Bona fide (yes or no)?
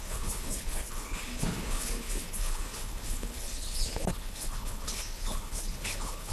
no